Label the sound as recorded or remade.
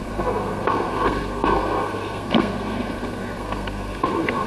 remade